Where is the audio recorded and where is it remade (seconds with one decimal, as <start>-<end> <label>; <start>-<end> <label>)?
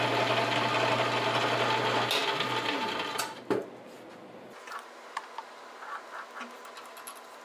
0.0-7.4 recorded